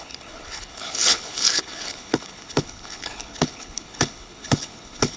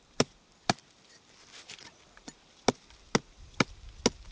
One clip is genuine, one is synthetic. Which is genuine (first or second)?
second